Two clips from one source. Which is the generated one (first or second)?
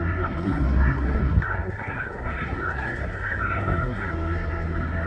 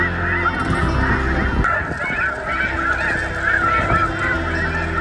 first